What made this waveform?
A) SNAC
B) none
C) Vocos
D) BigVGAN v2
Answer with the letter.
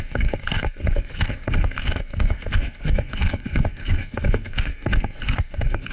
A